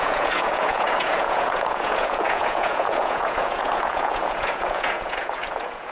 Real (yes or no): no